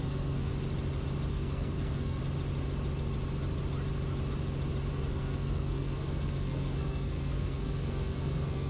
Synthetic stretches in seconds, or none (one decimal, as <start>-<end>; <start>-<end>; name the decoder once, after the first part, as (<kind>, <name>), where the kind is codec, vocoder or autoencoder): 0.0-0.5 (codec, SNAC); 1.3-2.2; 4.9-8.7